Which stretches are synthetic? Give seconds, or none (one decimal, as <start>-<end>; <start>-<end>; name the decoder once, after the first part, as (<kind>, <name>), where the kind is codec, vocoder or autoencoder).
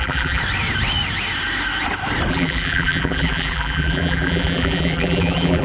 0.0-0.4 (vocoder, BigVGAN v2); 2.3-5.6